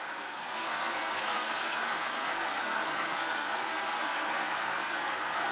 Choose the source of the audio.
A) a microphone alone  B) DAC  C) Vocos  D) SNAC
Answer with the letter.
D